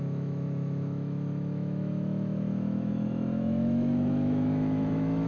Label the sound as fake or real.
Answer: fake